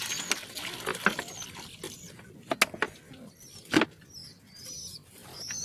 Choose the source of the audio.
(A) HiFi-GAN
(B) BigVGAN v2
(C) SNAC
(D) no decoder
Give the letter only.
D